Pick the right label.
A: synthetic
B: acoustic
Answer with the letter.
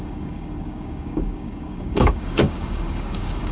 A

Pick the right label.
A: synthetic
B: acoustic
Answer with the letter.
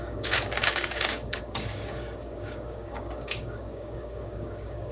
A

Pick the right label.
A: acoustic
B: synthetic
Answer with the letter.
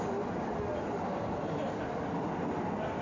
A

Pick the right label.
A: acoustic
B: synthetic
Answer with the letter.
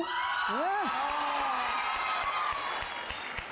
A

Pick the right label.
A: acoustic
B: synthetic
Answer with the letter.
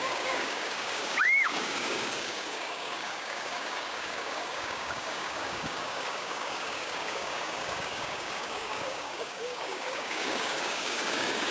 B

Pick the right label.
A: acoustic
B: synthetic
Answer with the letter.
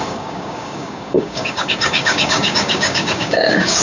B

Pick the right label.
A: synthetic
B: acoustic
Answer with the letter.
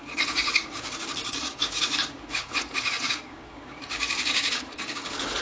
A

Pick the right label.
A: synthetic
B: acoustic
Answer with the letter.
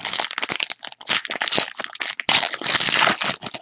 B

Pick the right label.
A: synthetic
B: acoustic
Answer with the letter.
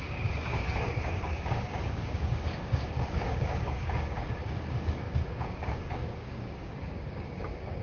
A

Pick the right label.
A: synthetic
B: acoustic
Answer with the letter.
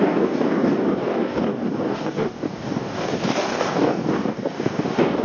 A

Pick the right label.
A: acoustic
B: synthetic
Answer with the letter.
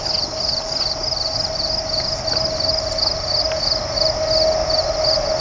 A